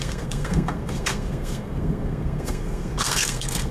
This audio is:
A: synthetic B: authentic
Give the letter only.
A